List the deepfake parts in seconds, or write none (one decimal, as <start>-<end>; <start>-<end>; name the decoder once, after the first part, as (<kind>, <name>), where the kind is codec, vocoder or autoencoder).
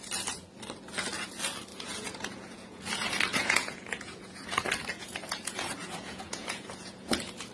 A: 1.7-2.9 (vocoder, Vocos); 3.3-4.5; 5.0-7.5